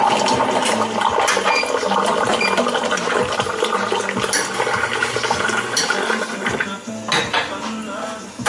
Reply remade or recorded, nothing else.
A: recorded